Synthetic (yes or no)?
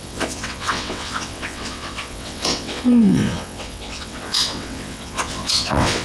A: yes